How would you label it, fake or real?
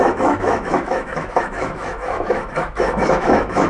fake